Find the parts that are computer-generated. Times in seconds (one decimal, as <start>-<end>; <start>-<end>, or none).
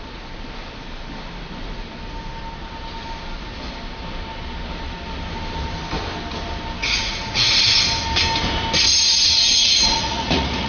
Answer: 6.8-7.5; 9.5-10.7